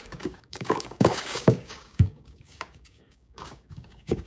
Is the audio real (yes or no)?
no